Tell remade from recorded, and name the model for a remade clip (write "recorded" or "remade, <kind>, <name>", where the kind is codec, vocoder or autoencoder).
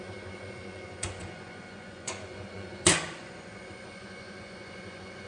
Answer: remade, vocoder, Vocos